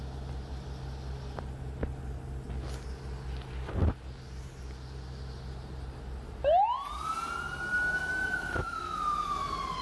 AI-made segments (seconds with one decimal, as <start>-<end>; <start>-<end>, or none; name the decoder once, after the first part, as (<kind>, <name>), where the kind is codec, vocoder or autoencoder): 8.1-8.8 (autoencoder, DAC-VAE)